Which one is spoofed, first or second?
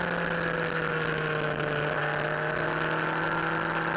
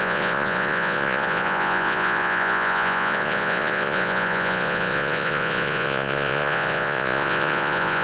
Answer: second